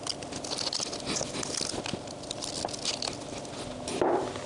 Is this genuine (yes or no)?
yes